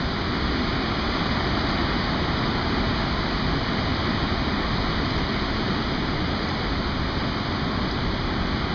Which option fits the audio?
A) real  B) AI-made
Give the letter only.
A